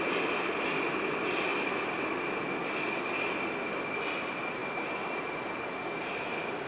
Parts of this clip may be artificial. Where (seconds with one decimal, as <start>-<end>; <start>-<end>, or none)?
none